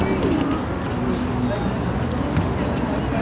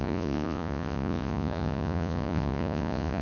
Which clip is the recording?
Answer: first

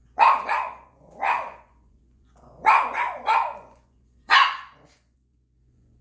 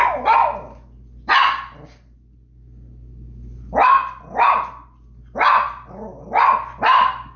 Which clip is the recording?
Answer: second